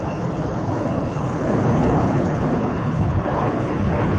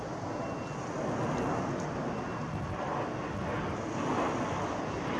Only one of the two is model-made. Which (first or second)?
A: first